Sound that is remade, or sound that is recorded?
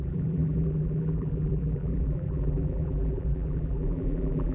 remade